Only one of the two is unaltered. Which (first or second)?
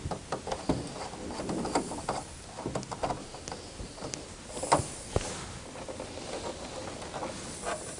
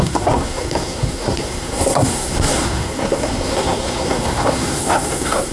first